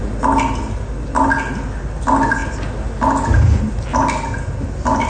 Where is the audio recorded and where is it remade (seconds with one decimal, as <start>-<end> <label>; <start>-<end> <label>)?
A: 0.0-5.1 recorded